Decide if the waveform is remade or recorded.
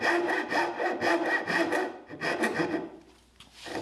recorded